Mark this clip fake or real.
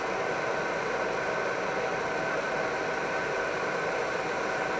real